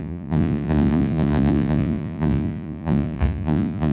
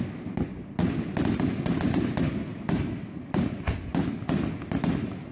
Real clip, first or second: second